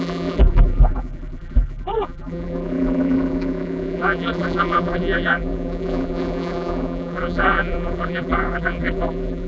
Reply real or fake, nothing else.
fake